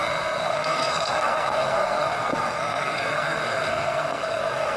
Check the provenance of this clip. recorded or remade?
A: remade